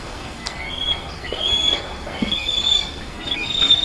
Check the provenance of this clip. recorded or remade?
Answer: remade